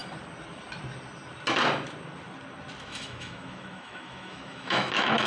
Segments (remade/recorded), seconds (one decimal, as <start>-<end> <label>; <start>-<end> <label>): 0.0-2.8 recorded; 2.8-5.3 remade